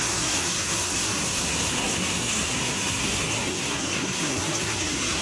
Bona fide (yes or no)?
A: no